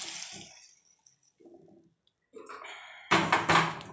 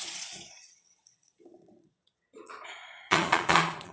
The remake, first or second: second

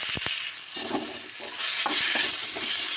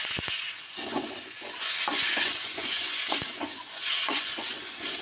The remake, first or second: second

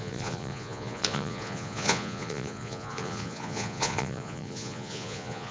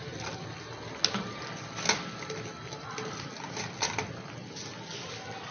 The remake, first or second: first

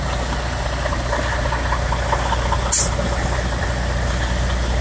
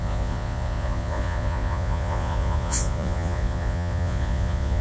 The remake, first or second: second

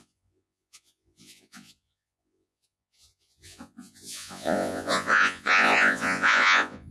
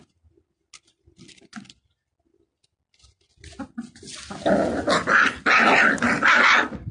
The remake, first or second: first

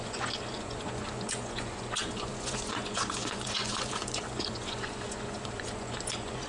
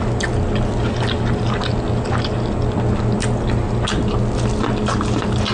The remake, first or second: first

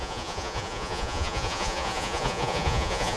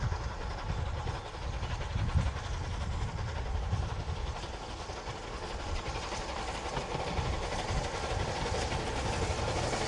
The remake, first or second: first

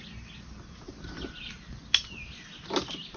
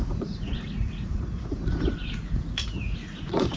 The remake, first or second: second